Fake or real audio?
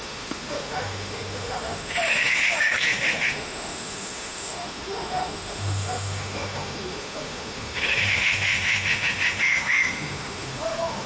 fake